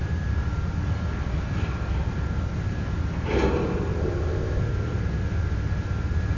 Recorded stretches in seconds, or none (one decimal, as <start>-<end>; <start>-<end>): 0.0-4.0; 4.6-6.4

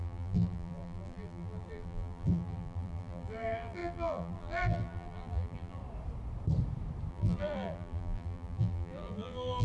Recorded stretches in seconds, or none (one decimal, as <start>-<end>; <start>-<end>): 5.8-7.1

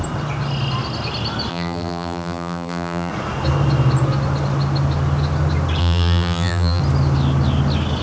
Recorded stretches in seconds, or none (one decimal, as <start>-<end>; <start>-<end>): 0.0-1.5; 3.1-5.8; 6.8-8.0